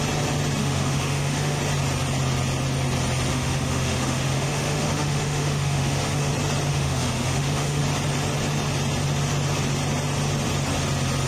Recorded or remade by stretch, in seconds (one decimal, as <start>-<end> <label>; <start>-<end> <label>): 0.0-0.6 recorded; 0.6-1.6 remade; 1.6-3.3 recorded; 3.3-6.3 remade; 6.3-6.7 recorded; 6.7-7.8 remade; 7.8-11.3 recorded

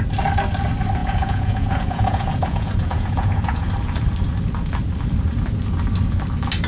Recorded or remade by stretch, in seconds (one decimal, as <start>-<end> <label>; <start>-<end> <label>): 0.0-1.0 recorded; 1.0-3.7 remade; 3.7-6.7 recorded

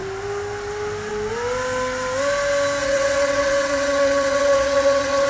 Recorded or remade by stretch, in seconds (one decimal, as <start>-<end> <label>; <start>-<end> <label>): 0.0-2.8 recorded; 2.8-5.3 remade

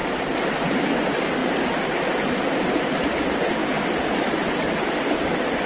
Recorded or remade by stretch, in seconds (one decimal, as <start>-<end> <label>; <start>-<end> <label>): 0.0-1.4 remade; 1.4-2.1 recorded; 2.1-5.7 remade